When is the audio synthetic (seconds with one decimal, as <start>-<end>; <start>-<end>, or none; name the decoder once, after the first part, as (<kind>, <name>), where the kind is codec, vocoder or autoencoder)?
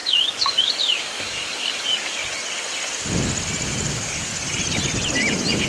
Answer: 0.0-2.2 (codec, DAC); 3.9-4.3